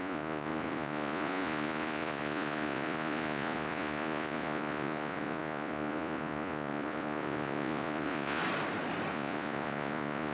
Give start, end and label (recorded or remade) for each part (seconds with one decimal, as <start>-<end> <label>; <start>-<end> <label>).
0.0-8.4 remade; 8.4-9.1 recorded; 9.1-10.3 remade